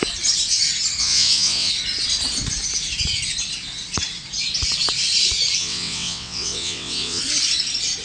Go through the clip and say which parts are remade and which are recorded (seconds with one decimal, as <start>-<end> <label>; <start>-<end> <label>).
0.0-1.0 recorded; 1.0-1.7 remade; 1.7-5.6 recorded; 5.6-7.2 remade; 7.2-8.0 recorded